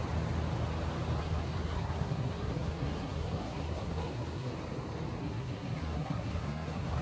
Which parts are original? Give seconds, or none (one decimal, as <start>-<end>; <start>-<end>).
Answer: 0.0-1.2; 4.5-5.2